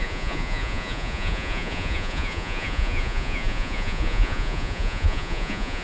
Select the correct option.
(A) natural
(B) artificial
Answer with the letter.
B